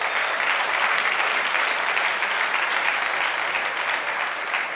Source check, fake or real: real